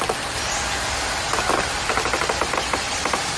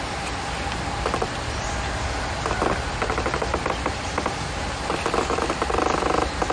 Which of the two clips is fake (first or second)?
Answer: first